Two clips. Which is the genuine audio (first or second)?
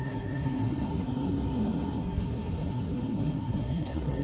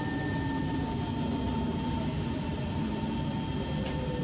second